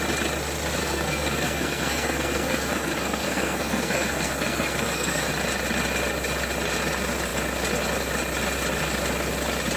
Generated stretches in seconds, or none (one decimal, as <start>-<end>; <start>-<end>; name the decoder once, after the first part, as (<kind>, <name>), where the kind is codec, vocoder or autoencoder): 0.8-5.3 (codec, SNAC)

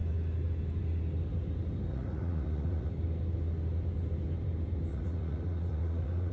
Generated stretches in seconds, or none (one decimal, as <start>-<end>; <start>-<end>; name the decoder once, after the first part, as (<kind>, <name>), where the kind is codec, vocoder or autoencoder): 1.9-2.9 (vocoder, Vocos); 4.9-6.3

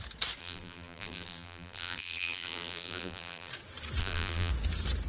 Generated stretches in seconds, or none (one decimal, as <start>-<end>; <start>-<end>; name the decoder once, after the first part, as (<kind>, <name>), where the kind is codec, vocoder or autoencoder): 0.4-3.5 (vocoder, BigVGAN v2); 4.0-4.5

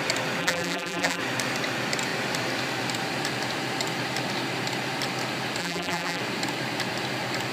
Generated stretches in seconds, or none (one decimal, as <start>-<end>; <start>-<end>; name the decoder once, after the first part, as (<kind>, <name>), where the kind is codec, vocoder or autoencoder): 0.4-1.2 (vocoder, BigVGAN v2); 5.6-6.2

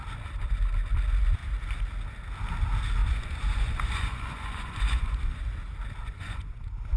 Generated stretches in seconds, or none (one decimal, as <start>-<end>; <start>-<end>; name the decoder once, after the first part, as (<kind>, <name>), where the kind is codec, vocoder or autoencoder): 3.0-5.3 (vocoder, Vocos); 6.0-6.6